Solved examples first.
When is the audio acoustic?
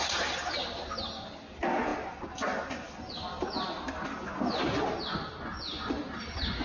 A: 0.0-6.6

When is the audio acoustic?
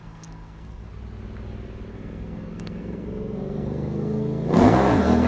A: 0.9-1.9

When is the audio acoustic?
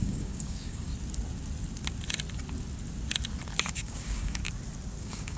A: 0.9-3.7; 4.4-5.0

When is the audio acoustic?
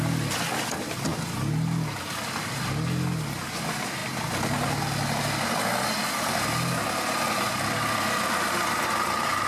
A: 0.0-9.5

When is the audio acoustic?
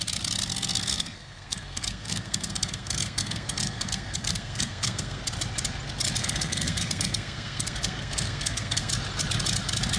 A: 0.0-0.5; 5.2-6.2; 8.9-10.0